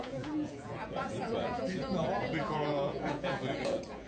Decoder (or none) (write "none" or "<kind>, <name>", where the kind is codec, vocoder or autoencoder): vocoder, Vocos